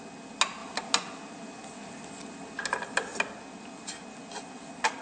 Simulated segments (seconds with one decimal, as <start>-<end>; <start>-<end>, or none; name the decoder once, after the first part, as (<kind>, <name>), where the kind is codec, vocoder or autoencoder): none